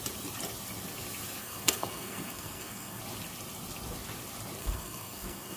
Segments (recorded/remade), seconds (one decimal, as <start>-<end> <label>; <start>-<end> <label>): 0.0-1.4 recorded; 1.4-3.0 remade; 3.0-4.6 recorded; 4.6-5.6 remade